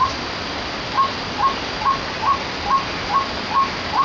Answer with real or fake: real